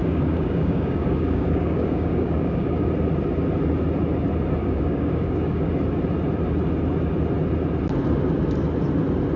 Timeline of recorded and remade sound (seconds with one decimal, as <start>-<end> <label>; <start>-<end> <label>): 0.0-2.9 remade; 2.9-4.6 recorded; 4.6-5.7 remade; 5.7-9.4 recorded